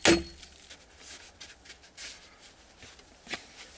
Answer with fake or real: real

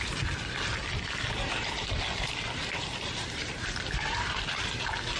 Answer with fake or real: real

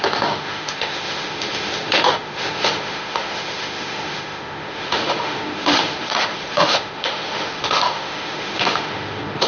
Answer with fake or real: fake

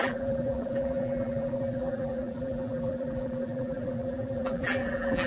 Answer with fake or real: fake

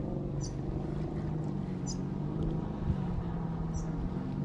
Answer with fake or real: real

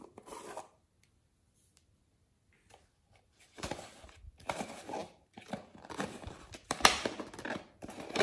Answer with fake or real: real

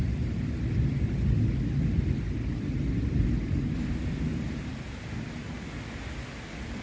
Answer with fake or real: real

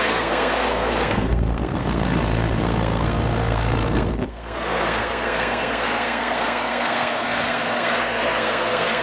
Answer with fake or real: fake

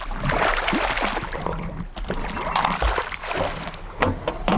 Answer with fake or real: real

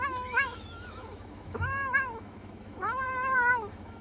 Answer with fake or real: fake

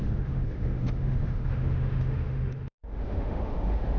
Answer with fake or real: fake